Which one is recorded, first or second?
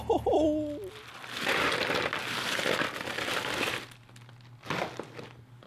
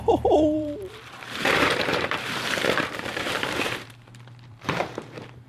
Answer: first